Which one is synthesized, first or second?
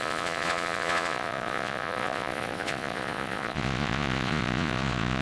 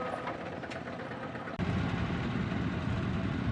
first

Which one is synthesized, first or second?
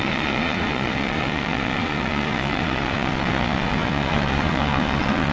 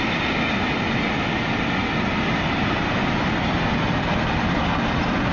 first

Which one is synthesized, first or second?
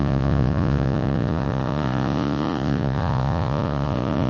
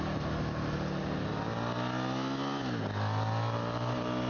first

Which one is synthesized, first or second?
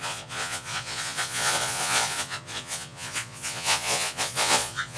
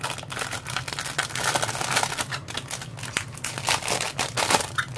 first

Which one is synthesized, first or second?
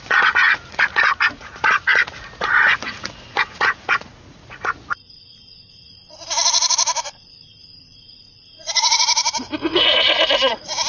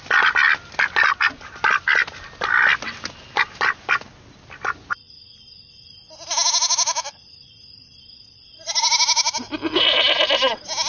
first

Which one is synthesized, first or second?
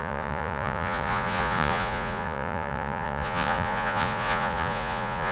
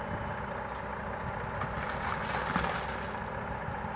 first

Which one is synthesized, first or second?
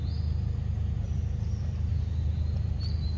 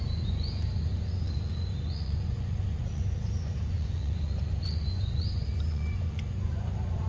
second